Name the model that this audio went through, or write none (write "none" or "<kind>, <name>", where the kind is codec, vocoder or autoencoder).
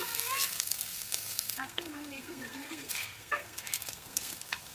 codec, SNAC